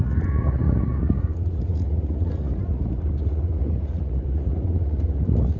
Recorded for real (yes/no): no